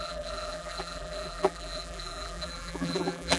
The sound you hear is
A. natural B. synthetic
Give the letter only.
B